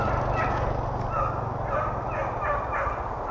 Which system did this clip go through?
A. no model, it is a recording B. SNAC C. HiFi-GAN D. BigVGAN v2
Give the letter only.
A